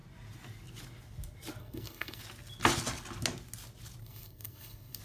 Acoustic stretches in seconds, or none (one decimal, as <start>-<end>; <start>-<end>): 0.0-1.6; 2.2-4.0